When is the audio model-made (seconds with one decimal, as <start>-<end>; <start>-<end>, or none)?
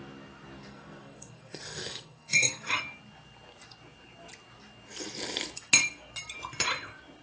0.6-2.7